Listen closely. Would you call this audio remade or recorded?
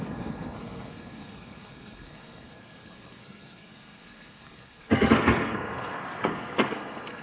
remade